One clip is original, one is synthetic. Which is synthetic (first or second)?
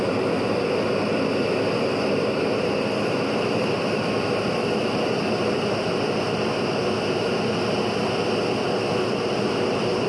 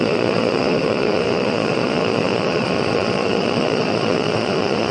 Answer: second